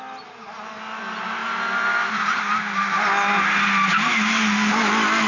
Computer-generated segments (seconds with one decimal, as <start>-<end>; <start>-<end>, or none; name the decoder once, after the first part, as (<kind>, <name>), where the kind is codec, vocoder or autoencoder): none